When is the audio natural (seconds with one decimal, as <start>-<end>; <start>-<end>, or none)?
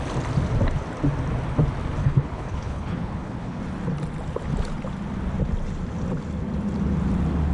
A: 0.0-2.0; 3.6-7.5